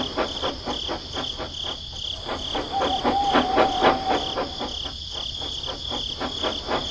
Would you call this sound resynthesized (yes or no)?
no